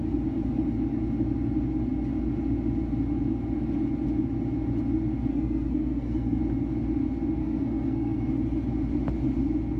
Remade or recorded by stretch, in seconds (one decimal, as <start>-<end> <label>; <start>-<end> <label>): 0.0-5.3 recorded; 5.3-6.4 remade; 6.4-7.4 recorded; 7.4-8.3 remade; 8.3-9.8 recorded